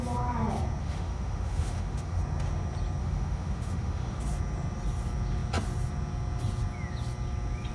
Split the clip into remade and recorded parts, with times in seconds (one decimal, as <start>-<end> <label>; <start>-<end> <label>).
0.0-0.8 recorded; 0.8-2.2 remade; 2.2-3.0 recorded; 3.0-4.2 remade; 4.2-7.7 recorded